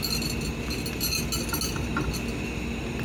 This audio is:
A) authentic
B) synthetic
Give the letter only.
A